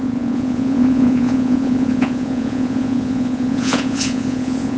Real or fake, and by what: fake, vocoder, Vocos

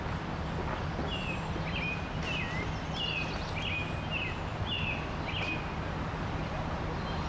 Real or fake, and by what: real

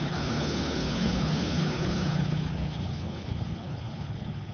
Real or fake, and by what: fake, codec, HILCodec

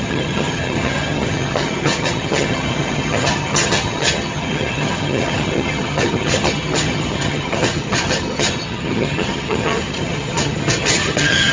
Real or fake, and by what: fake, vocoder, HiFi-GAN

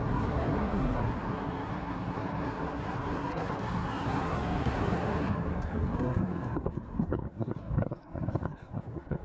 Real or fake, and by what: fake, codec, SNAC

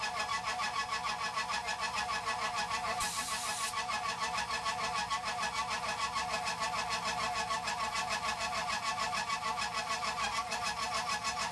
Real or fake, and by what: real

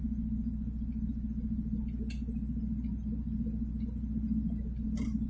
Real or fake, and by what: real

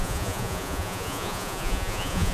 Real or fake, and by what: fake, vocoder, Vocos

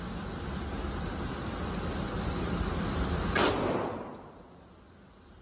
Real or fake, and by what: real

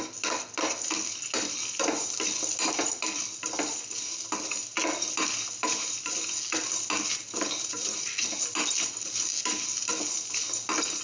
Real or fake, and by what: real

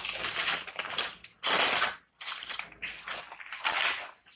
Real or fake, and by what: real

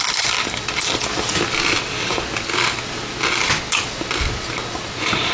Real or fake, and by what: real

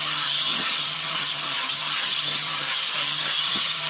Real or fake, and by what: fake, vocoder, HiFi-GAN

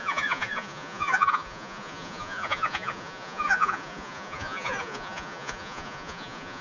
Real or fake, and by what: fake, vocoder, Vocos